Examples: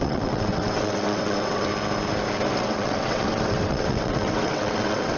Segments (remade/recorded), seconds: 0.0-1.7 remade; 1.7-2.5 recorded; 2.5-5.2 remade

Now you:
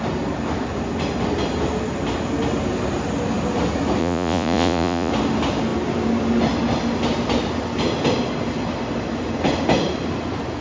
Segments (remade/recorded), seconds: 0.0-4.0 recorded; 4.0-5.1 remade; 5.1-10.6 recorded

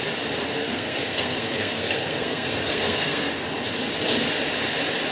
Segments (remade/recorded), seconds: 0.0-0.6 recorded; 0.6-3.3 remade; 3.3-5.1 recorded